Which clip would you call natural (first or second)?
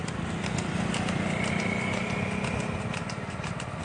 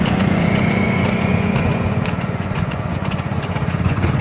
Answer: first